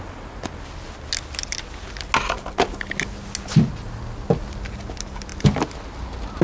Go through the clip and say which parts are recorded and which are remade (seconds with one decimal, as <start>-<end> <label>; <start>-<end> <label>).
0.0-6.4 recorded